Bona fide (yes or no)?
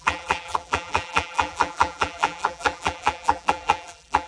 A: no